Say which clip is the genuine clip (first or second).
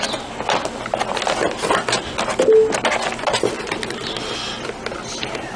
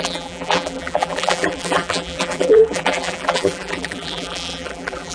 first